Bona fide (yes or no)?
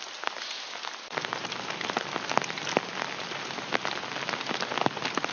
yes